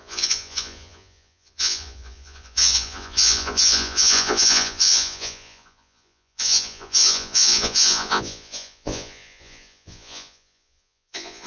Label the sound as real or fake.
fake